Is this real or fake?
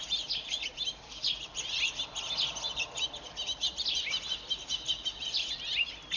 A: real